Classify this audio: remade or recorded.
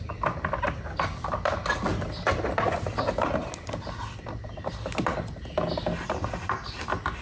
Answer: recorded